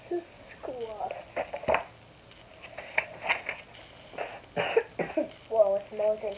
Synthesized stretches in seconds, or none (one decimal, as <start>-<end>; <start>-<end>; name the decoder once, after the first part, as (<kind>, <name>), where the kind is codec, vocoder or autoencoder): none